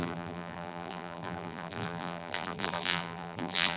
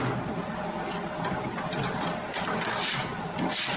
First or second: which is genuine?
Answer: second